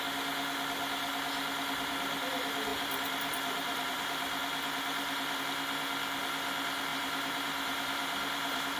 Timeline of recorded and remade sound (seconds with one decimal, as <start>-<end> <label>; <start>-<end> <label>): 0.0-2.7 recorded; 2.7-5.4 remade; 5.4-6.9 recorded; 6.9-8.8 remade